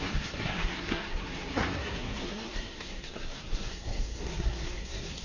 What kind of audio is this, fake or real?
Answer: fake